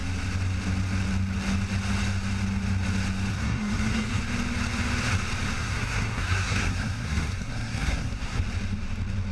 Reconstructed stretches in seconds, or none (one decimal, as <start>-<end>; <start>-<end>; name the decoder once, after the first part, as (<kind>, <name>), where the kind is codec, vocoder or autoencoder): 3.3-4.2 (codec, SNAC); 5.6-8.4